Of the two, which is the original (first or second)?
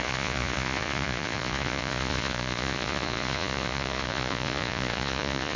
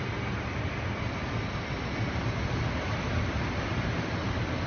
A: second